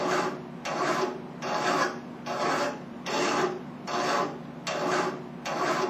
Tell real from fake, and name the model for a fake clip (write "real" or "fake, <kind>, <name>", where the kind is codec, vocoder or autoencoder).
real